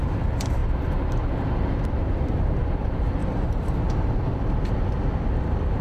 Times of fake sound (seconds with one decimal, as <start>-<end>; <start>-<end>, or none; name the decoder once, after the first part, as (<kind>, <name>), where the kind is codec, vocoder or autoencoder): none